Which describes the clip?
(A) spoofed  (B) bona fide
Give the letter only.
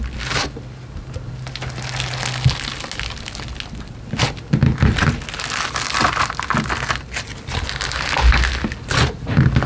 B